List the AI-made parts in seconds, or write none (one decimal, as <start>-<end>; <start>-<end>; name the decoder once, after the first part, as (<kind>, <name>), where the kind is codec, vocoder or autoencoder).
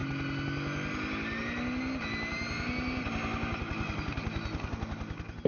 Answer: none